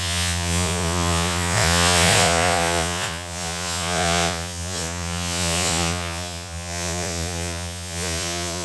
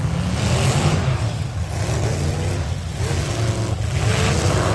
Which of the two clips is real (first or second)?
second